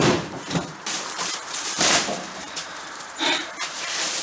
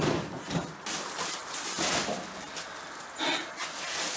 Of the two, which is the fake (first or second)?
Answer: first